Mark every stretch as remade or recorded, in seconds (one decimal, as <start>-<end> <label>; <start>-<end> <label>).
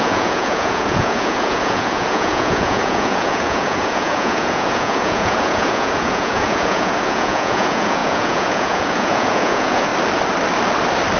0.0-9.9 remade; 9.9-11.2 recorded